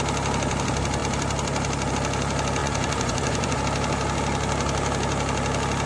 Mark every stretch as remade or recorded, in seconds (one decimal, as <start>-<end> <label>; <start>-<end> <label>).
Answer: 0.0-2.6 recorded; 2.6-3.6 remade; 3.6-5.9 recorded